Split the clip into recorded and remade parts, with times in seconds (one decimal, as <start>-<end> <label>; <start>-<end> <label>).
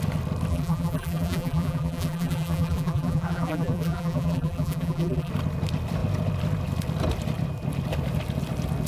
0.0-0.5 recorded; 0.5-5.3 remade; 5.3-8.9 recorded